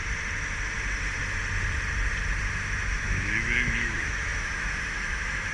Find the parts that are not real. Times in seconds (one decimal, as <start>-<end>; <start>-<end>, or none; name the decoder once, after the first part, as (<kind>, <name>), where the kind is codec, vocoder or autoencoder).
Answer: 2.9-5.5 (autoencoder, DAC-VAE)

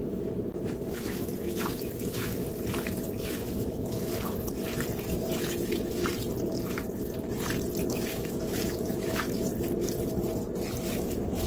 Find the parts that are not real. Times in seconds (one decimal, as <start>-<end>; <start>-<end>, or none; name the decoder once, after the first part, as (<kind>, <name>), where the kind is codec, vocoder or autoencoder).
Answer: 0.0-2.4 (autoencoder, DAC-VAE); 3.2-4.1; 5.0-6.0; 7.9-9.5; 10.9-11.5

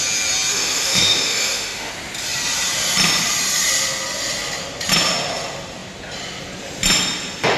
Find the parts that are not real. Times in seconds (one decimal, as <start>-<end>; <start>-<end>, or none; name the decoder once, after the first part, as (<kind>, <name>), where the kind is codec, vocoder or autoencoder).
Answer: 0.5-1.9 (autoencoder, DAC-VAE)

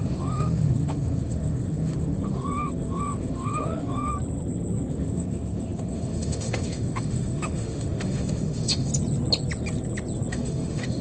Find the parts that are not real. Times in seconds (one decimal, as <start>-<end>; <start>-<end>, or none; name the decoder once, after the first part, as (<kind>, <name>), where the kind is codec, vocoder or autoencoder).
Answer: 0.0-4.1 (autoencoder, DAC-VAE); 4.9-8.9; 10.3-11.0

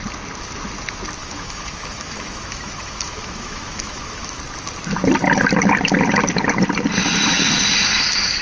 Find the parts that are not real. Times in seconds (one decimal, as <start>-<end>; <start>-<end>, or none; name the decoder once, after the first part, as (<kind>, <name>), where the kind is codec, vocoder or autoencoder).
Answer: 1.2-4.4 (autoencoder, DAC-VAE)

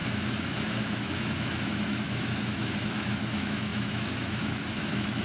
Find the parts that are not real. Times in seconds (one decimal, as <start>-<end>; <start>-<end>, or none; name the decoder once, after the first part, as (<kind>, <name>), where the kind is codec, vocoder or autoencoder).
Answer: 0.0-5.2 (autoencoder, DAC-VAE)